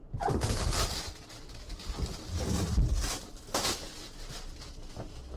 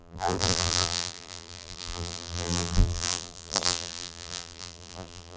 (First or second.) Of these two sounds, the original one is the first